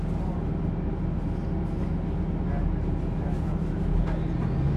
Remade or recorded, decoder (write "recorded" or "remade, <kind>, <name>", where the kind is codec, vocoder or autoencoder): recorded